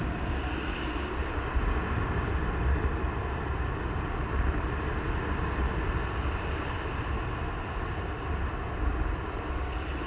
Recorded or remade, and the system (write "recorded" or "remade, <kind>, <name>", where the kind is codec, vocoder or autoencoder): recorded